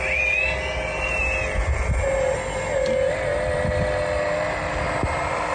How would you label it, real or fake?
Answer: real